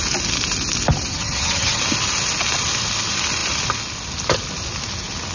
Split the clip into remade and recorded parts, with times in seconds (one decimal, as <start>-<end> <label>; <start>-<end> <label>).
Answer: 0.0-1.1 recorded; 1.1-1.8 remade; 1.8-5.3 recorded